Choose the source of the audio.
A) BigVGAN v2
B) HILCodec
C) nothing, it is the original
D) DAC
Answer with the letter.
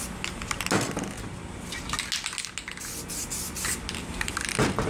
C